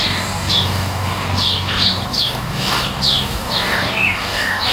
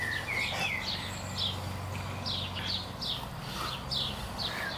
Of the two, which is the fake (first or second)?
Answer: first